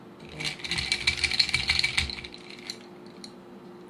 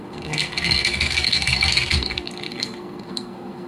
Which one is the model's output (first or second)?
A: second